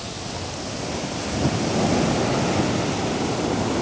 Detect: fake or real real